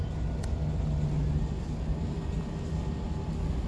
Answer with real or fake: real